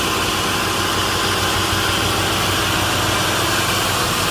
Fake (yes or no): no